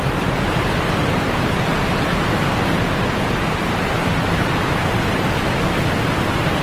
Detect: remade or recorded recorded